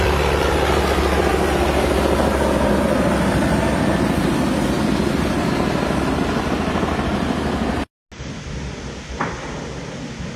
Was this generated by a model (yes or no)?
no